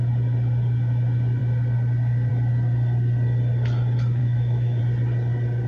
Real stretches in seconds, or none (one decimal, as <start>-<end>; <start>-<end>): 0.0-4.2; 4.8-5.7